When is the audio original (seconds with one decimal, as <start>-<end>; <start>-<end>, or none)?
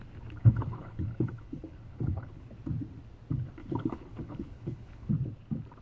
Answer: 0.0-0.4; 2.5-3.6; 5.1-5.8